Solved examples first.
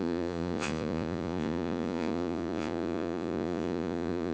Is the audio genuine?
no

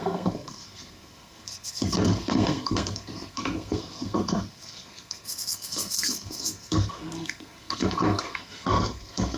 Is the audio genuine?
no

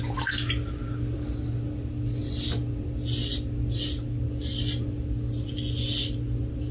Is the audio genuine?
yes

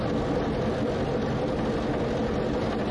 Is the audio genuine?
yes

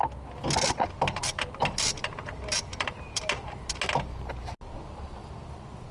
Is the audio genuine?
yes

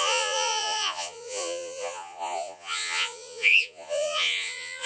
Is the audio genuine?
no